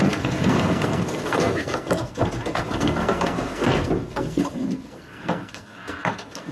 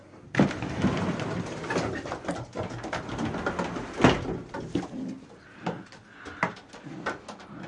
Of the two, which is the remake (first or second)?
first